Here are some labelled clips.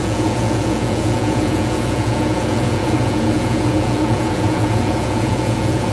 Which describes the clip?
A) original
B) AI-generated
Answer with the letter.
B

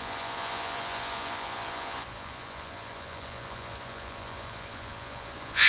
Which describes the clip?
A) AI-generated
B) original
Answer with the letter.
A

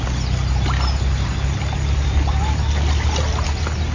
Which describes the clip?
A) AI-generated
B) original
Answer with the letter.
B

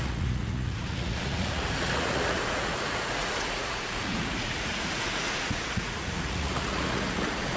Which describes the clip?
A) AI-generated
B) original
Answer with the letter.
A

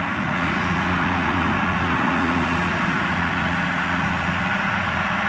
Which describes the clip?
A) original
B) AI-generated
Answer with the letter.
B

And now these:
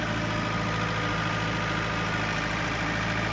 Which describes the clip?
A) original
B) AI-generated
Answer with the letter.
A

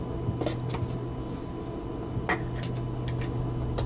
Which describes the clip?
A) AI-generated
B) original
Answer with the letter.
B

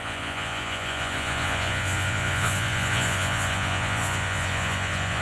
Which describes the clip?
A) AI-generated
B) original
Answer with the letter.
A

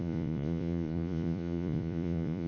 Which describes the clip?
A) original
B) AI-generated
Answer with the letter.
B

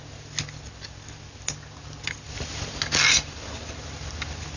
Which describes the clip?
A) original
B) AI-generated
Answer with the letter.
A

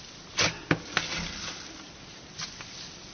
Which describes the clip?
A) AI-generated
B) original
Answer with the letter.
B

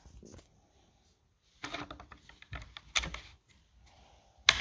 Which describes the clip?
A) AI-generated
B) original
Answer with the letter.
B